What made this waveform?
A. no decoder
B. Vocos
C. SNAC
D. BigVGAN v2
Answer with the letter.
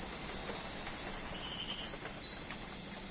A